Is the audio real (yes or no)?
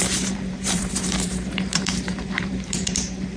no